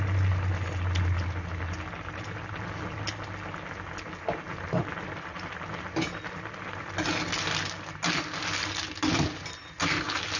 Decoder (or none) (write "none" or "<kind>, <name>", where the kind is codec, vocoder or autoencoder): none